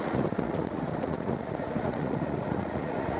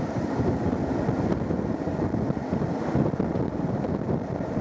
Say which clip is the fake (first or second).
first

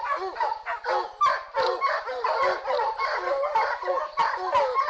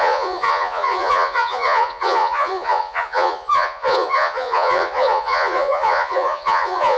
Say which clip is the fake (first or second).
second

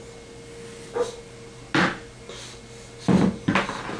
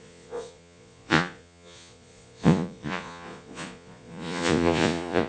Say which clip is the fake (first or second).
second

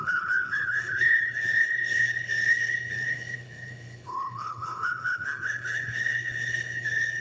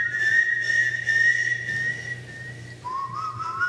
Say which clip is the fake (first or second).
first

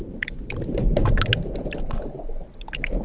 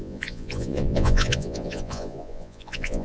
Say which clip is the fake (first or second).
second